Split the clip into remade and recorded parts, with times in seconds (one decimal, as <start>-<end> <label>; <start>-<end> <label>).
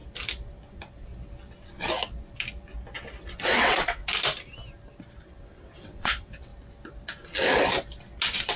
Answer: 0.0-0.7 recorded; 0.7-1.1 remade; 1.1-3.6 recorded; 3.6-4.0 remade; 4.0-5.2 recorded; 5.2-6.5 remade; 6.5-8.6 recorded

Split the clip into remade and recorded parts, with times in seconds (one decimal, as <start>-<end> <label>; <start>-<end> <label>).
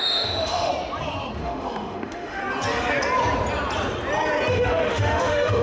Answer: 0.0-0.7 remade; 0.7-1.4 recorded; 1.4-2.4 remade; 2.4-4.5 recorded; 4.5-5.6 remade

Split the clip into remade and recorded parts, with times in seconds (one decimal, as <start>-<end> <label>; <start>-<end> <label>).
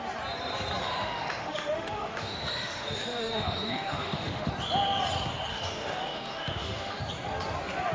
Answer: 0.0-0.8 recorded; 0.8-4.5 remade; 4.5-5.5 recorded; 5.5-7.0 remade; 7.0-7.9 recorded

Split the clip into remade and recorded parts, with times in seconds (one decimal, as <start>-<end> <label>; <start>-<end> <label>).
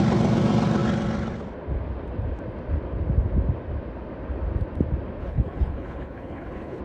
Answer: 0.0-5.2 recorded; 5.2-6.8 remade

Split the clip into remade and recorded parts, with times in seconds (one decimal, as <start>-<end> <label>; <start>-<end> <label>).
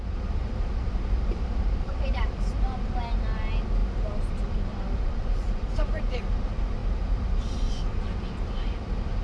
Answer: 0.0-0.4 recorded; 0.4-2.9 remade; 2.9-3.8 recorded; 3.8-6.2 remade; 6.2-6.8 recorded; 6.8-7.4 remade; 7.4-9.2 recorded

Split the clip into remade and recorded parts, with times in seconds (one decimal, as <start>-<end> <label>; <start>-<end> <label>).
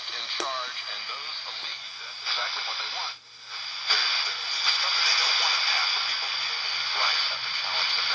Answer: 0.0-1.7 recorded; 1.7-2.7 remade; 2.7-3.7 recorded; 3.7-7.4 remade; 7.4-8.1 recorded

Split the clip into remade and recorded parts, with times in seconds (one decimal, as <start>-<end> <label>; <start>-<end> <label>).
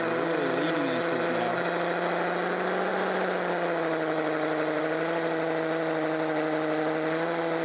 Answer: 0.0-7.6 recorded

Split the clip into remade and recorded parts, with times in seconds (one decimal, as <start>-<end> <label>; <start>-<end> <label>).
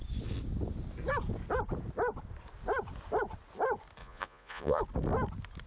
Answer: 0.0-4.0 recorded; 4.0-4.8 remade; 4.8-5.7 recorded